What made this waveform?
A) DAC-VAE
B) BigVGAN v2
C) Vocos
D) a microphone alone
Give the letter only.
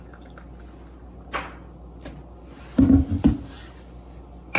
D